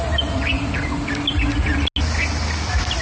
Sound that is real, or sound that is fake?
real